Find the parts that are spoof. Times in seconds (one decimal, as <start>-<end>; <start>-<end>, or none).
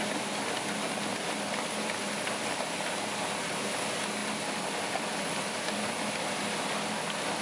1.1-2.5; 4.2-7.4